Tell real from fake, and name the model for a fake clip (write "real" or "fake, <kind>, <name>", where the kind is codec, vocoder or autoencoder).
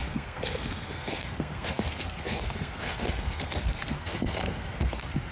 fake, codec, SNAC